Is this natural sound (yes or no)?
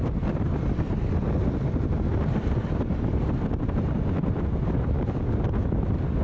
no